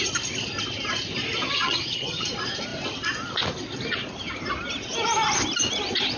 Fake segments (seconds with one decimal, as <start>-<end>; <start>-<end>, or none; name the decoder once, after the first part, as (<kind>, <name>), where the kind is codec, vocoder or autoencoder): 1.5-2.3 (vocoder, HiFi-GAN)